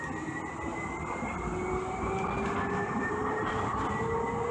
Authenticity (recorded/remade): recorded